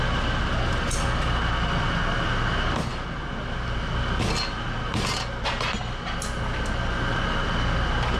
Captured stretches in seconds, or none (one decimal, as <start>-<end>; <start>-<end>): 0.0-8.2